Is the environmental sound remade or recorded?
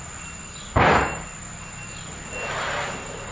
recorded